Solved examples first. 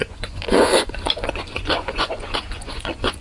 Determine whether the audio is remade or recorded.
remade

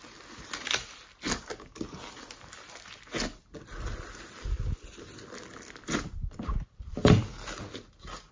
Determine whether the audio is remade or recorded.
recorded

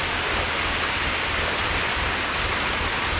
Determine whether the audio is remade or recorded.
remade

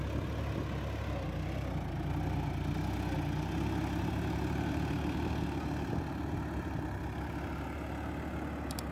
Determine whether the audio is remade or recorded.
recorded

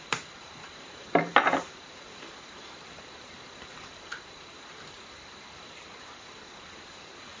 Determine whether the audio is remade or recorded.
remade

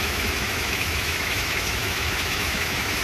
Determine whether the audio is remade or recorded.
remade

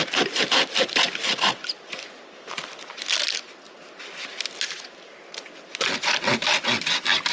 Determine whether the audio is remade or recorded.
recorded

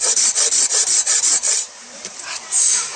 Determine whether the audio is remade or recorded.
recorded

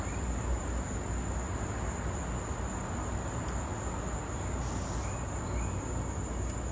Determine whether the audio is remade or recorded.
recorded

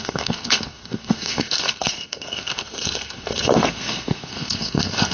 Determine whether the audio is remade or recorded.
remade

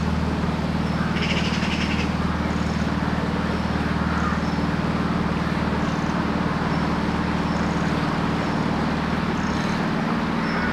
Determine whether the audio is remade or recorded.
recorded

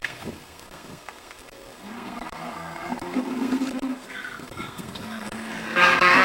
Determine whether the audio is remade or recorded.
remade